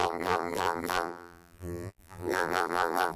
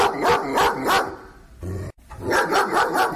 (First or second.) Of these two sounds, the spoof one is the first